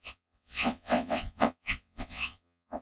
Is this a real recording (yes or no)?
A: no